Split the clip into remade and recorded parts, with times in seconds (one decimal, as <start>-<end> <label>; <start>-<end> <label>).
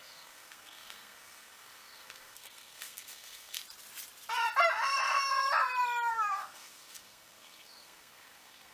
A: 0.0-3.6 remade; 3.6-6.1 recorded; 6.1-8.7 remade